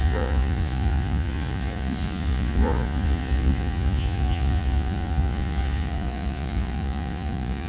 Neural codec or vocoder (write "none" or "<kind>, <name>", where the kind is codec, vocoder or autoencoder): vocoder, Vocos